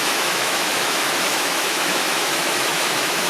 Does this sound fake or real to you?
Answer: fake